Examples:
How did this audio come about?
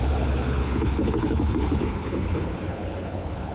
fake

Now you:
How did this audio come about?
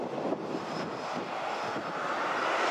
real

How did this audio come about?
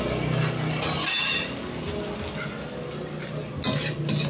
real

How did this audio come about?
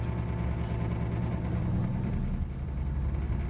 real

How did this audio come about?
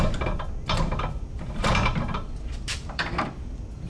fake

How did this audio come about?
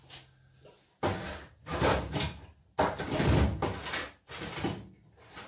real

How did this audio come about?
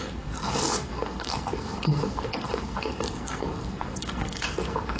fake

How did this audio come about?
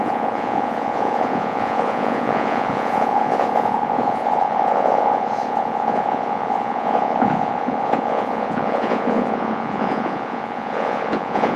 fake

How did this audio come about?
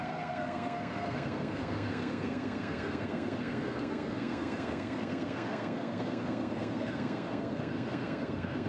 fake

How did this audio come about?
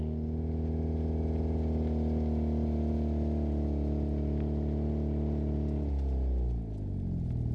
real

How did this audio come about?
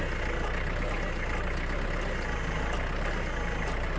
real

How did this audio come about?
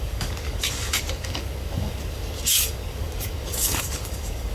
fake